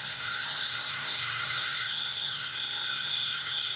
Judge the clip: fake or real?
fake